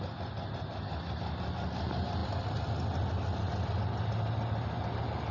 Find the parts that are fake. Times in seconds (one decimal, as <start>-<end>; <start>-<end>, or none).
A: none